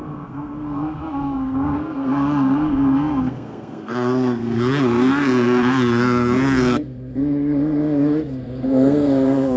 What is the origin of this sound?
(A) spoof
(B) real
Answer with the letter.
A